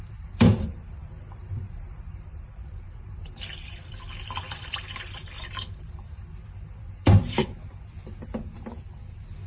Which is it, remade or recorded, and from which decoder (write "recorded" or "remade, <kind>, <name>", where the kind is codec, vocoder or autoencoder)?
remade, vocoder, BigVGAN v2